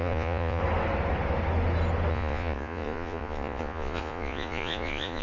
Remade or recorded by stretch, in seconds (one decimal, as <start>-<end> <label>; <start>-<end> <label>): 0.0-0.6 remade; 0.6-2.1 recorded; 2.1-5.2 remade